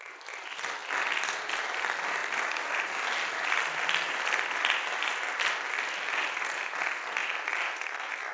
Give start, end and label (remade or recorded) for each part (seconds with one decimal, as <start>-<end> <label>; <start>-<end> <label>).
0.0-8.3 recorded